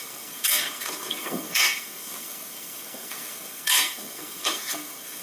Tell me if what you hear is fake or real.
fake